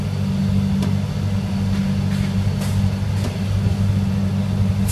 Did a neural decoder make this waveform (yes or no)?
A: no